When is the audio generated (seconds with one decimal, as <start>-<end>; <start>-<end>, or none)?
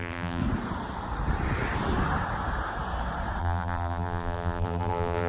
0.0-0.4; 3.4-5.3